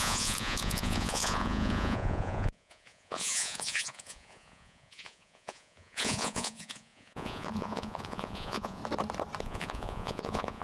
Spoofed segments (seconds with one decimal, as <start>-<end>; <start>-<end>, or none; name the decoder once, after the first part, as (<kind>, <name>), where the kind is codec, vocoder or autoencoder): 0.0-8.8 (vocoder, Vocos); 9.4-10.6